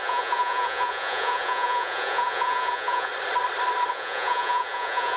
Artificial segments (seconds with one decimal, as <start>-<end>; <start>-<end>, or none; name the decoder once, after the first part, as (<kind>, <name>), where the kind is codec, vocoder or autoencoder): 0.0-3.1 (vocoder, Vocos); 3.9-5.2